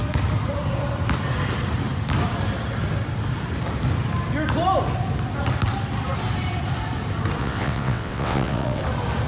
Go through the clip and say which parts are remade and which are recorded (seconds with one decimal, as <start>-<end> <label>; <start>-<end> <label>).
0.0-7.4 recorded; 7.4-8.8 remade; 8.8-9.3 recorded